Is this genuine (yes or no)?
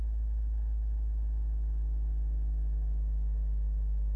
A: yes